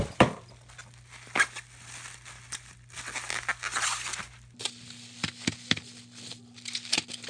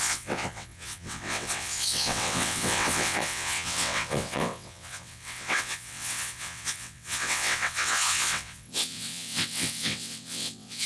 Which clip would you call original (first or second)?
first